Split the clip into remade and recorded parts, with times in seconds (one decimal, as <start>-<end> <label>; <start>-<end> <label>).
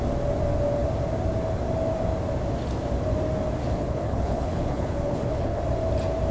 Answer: 0.0-3.6 recorded; 3.6-5.6 remade; 5.6-6.3 recorded